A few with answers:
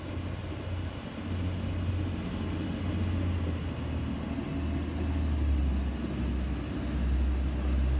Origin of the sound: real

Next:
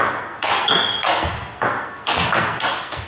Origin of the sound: fake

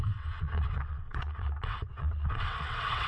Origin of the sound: fake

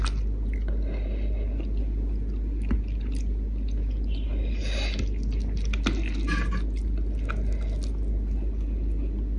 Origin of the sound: real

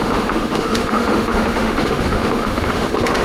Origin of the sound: fake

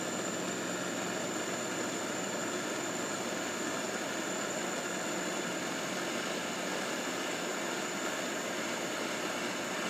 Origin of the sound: real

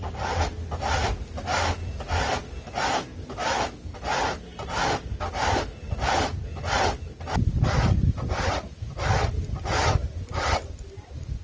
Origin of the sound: real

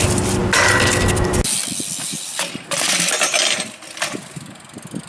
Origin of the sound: real